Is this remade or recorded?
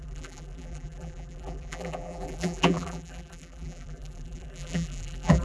remade